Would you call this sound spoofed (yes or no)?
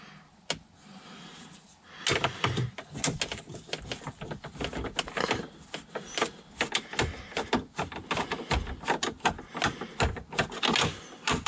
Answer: no